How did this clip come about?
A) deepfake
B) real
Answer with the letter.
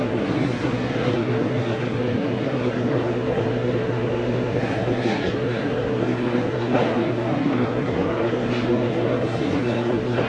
A